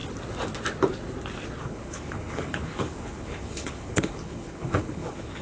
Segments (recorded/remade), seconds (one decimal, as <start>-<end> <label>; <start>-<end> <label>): 0.0-1.6 recorded; 1.6-5.4 remade